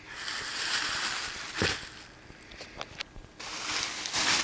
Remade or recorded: recorded